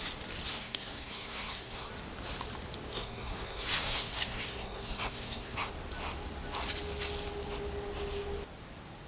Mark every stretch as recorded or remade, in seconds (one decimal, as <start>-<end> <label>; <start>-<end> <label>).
0.0-0.5 recorded; 0.5-1.9 remade; 1.9-2.9 recorded; 2.9-5.7 remade; 5.7-9.1 recorded